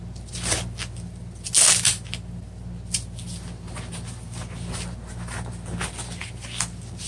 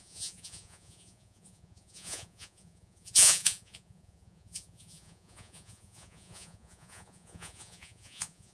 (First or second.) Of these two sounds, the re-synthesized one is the second